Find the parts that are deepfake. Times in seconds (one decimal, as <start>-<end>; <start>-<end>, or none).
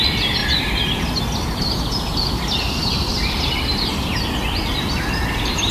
0.4-1.2